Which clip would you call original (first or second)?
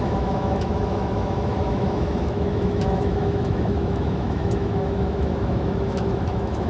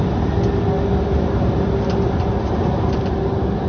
second